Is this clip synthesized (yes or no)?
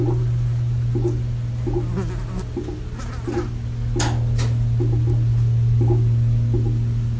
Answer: no